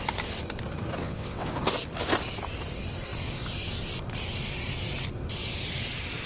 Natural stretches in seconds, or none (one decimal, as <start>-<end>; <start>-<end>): 0.0-1.0; 1.5-6.3